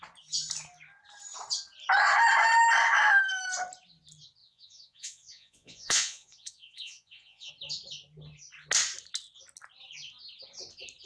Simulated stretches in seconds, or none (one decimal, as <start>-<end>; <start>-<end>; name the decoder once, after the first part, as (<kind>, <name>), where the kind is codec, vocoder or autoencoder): 4.4-7.5 (vocoder, Vocos)